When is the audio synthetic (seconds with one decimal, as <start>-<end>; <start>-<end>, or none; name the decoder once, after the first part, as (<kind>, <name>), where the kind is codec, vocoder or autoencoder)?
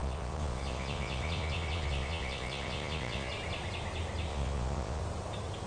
0.0-3.3 (vocoder, Vocos); 4.3-5.0